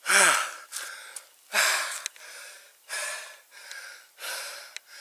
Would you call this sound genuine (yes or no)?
yes